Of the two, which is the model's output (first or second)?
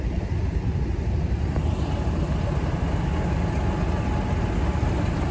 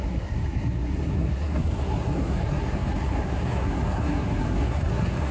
second